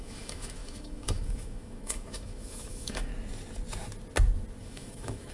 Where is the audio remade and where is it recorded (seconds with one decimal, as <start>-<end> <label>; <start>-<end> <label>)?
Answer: 0.0-3.1 remade; 3.1-4.6 recorded; 4.6-5.3 remade